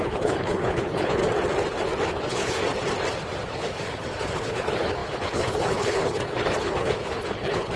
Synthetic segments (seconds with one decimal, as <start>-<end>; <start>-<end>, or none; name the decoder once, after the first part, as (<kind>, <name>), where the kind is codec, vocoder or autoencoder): 0.0-1.2 (codec, HILCodec); 2.0-2.6; 3.5-7.8